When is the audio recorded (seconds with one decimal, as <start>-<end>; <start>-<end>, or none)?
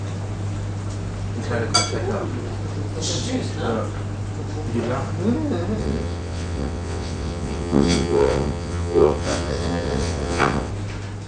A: 0.0-5.8; 10.7-11.3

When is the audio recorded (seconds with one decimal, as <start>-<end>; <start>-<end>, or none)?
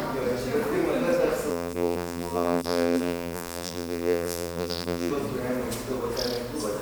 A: 0.0-1.5; 5.1-6.8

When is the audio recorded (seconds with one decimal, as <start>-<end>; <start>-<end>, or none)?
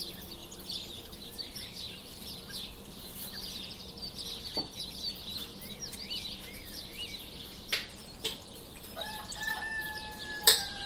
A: 0.0-1.5; 2.3-8.0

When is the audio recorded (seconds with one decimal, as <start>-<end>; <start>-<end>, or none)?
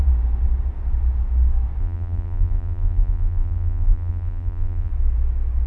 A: 0.0-1.8; 4.9-5.7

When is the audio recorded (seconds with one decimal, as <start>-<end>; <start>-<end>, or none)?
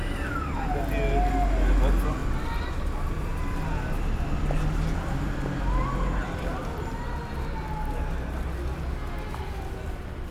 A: 0.0-2.2; 3.4-10.3